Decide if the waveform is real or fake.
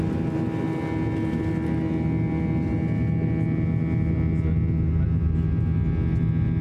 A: real